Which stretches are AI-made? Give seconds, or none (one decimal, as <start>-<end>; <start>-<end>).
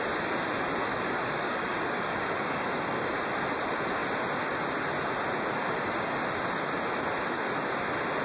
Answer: 0.9-3.1